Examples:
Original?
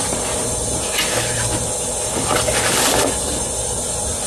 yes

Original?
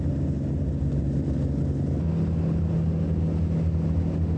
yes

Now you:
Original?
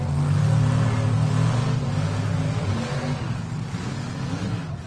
yes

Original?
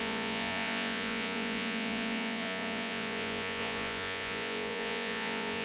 no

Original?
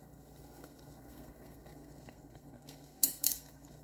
no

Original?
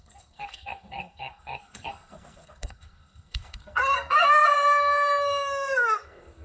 no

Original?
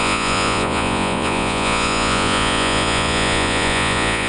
no